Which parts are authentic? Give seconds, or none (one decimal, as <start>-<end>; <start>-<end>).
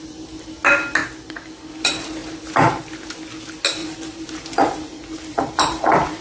0.0-3.8